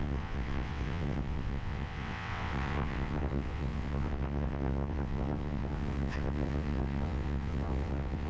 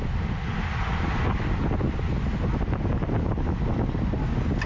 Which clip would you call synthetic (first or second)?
first